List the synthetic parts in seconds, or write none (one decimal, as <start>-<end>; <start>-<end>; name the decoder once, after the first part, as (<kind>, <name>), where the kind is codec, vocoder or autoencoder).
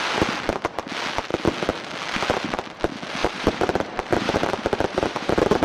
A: 3.2-5.6 (vocoder, BigVGAN v2)